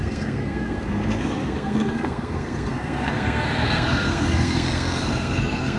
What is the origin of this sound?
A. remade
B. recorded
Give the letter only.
A